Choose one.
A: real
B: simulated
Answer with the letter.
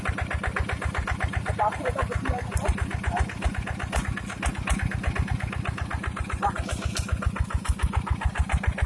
A